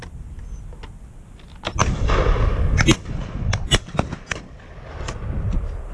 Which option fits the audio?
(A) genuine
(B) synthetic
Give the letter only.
A